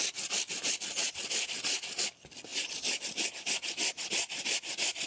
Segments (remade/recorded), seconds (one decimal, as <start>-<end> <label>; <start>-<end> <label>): 0.0-2.5 recorded; 2.5-3.3 remade; 3.3-5.1 recorded